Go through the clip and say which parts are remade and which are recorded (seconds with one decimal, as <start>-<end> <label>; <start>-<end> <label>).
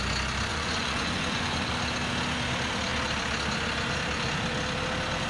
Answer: 0.0-0.5 recorded; 0.5-1.7 remade; 1.7-5.3 recorded